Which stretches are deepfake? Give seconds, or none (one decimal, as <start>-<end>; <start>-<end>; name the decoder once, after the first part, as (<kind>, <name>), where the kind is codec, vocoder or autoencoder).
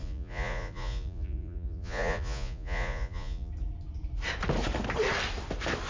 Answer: 0.0-3.5 (vocoder, Vocos)